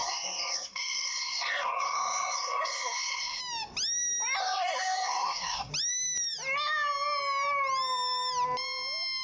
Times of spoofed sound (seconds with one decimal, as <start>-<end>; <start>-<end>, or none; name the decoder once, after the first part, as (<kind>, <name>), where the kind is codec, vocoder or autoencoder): 0.0-3.4 (codec, SNAC); 4.4-5.7